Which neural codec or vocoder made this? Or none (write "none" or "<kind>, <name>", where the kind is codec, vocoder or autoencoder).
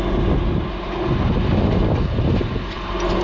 none